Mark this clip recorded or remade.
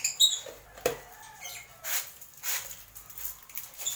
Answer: recorded